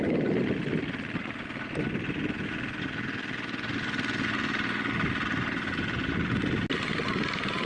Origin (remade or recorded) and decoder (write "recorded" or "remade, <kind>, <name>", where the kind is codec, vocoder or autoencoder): recorded